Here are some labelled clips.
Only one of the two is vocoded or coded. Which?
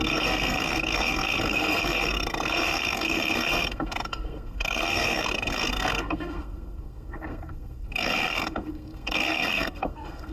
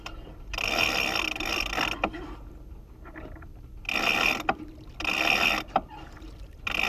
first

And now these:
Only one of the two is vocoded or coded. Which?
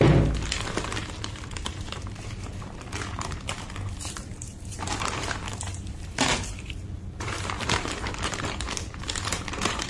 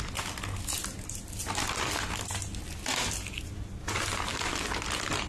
first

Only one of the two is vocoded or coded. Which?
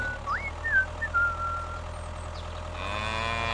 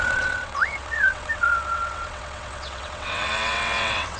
second